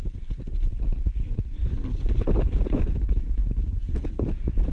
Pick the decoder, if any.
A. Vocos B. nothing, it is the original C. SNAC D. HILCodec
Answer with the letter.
B